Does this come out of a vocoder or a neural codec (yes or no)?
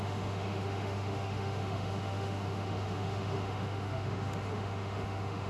yes